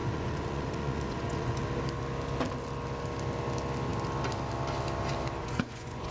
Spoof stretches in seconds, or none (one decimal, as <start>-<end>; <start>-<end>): 0.0-1.6; 5.4-6.1